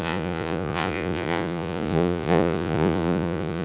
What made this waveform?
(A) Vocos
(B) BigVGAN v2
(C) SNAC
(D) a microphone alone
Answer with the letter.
A